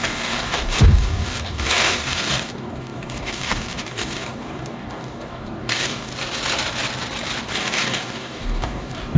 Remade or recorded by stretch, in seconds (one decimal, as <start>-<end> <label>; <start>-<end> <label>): 0.0-6.1 remade; 6.1-7.5 recorded; 7.5-9.2 remade